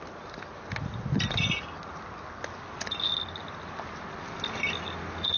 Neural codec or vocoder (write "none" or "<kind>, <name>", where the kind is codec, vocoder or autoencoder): none